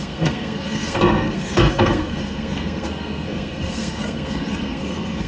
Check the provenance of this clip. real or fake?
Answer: fake